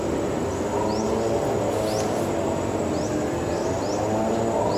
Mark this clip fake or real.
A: real